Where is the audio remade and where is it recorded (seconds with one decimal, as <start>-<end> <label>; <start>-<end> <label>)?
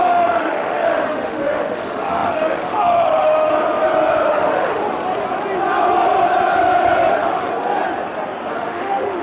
0.0-3.5 remade; 3.5-4.3 recorded; 4.3-4.8 remade; 4.8-7.1 recorded; 7.1-7.5 remade; 7.5-8.5 recorded; 8.5-9.2 remade